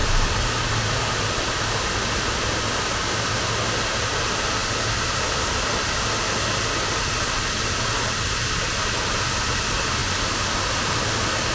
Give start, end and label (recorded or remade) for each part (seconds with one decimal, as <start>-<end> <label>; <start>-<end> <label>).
0.0-11.5 recorded